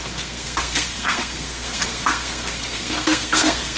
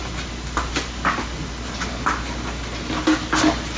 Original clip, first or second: second